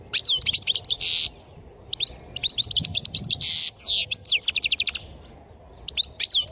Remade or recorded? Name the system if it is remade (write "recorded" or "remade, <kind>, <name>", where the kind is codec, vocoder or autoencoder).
recorded